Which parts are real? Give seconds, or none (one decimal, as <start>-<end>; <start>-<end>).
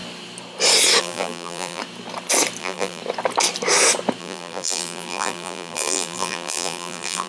0.0-1.0; 1.8-2.6; 3.0-4.2